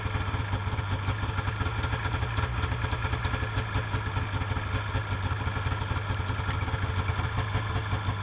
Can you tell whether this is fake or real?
real